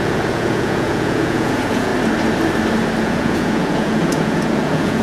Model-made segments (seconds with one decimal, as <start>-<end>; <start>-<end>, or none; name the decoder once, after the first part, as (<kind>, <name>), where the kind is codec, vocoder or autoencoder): 0.0-1.9 (vocoder, Vocos); 3.0-5.0

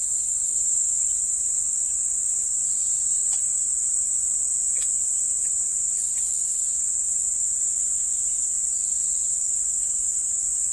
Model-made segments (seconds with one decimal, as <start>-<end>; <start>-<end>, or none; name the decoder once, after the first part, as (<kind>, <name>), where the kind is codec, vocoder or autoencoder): 1.3-3.7 (vocoder, Vocos); 9.8-10.7

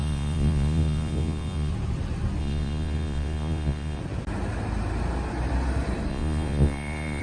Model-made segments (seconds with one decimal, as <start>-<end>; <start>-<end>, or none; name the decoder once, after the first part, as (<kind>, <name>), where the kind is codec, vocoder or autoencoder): 0.0-1.7 (vocoder, Vocos); 2.4-4.0; 6.1-7.2

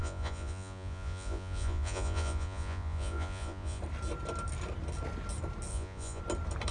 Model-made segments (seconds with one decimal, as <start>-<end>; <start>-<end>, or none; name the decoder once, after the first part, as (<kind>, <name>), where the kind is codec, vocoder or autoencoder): 0.0-3.8 (vocoder, Vocos); 5.7-6.2

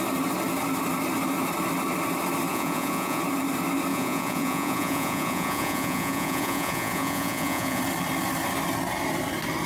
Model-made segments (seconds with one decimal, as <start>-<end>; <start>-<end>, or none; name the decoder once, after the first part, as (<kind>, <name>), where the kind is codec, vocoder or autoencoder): 2.5-3.2 (vocoder, Vocos); 3.9-7.8

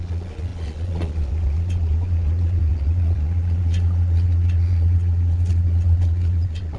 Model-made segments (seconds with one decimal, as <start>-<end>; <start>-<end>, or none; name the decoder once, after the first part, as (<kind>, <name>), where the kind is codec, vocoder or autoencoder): 0.0-6.8 (vocoder, Vocos)